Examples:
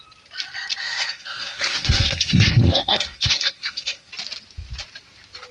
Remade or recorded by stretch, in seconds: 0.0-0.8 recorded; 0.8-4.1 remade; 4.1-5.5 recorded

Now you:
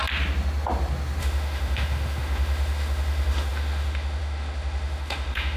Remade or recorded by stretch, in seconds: 0.0-1.2 recorded; 1.2-5.6 remade

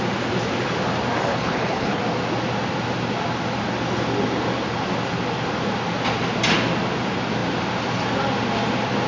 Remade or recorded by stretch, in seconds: 0.0-1.3 recorded; 1.3-2.0 remade; 2.0-9.1 recorded

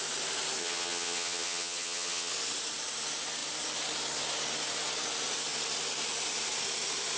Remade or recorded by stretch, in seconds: 0.0-0.6 recorded; 0.6-2.3 remade; 2.3-7.2 recorded

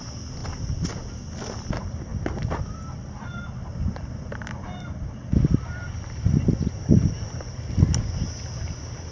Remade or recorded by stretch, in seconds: 0.0-9.1 recorded

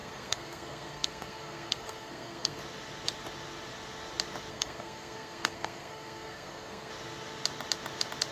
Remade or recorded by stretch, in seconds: 0.0-2.6 remade; 2.6-4.5 recorded; 4.5-6.9 remade; 6.9-8.3 recorded

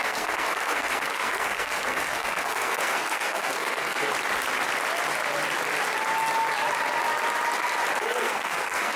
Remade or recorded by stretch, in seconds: 0.0-4.1 remade; 4.1-8.0 recorded; 8.0-9.0 remade